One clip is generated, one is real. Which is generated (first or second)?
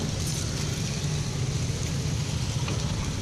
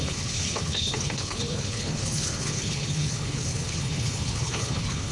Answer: second